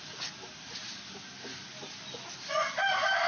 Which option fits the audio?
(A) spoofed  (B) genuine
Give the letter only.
B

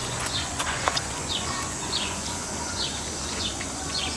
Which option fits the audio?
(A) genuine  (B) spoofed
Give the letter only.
B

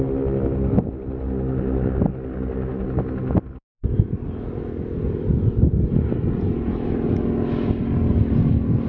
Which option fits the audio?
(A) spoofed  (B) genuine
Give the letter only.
B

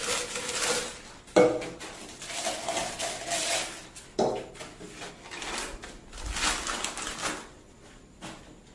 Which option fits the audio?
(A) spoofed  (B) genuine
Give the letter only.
B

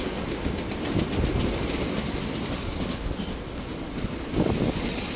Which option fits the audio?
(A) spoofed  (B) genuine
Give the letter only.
B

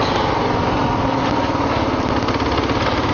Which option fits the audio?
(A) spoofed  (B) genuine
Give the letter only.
B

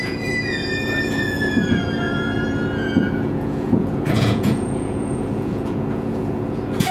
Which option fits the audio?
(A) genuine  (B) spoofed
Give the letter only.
B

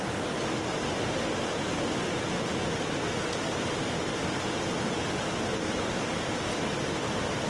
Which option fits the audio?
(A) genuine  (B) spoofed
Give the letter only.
A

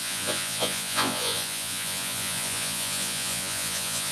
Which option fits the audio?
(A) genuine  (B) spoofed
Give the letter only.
B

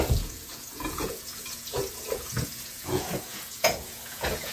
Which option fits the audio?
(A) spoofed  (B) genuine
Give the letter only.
A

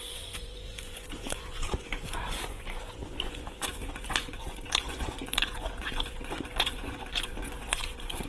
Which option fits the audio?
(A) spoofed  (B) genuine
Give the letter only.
A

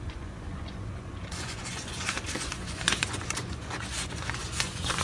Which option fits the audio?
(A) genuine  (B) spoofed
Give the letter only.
B